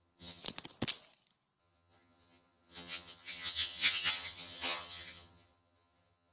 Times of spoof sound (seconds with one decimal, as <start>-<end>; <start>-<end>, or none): 0.0-0.4; 1.6-6.3